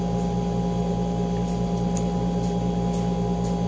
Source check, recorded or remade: recorded